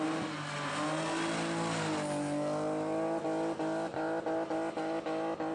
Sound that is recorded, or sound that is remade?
recorded